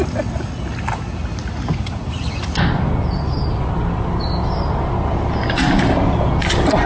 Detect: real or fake real